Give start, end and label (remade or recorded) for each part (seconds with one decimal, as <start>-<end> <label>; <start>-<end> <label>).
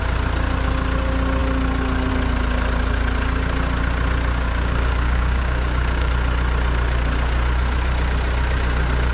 0.0-4.3 recorded; 4.3-6.1 remade; 6.1-9.1 recorded